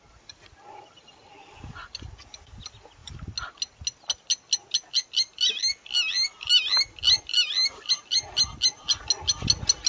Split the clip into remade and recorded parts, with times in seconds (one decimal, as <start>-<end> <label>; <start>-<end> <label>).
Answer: 0.0-9.9 recorded